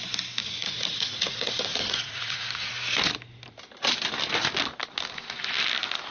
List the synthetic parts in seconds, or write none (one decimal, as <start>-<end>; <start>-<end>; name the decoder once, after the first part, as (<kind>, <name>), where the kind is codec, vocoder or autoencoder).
0.4-2.7 (vocoder, Vocos)